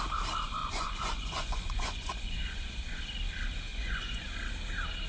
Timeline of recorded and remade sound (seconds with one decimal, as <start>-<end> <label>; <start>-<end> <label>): 0.0-0.6 recorded; 0.6-3.0 remade; 3.0-3.7 recorded; 3.7-4.3 remade; 4.3-5.1 recorded